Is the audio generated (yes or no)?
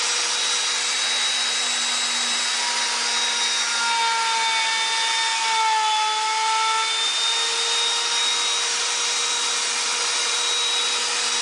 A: no